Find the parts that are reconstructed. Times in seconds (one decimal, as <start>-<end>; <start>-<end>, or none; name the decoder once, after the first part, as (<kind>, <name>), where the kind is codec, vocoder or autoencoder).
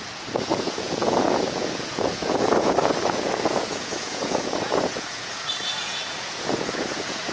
0.0-7.3 (vocoder, Vocos)